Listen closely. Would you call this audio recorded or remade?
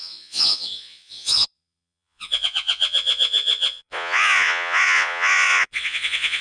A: remade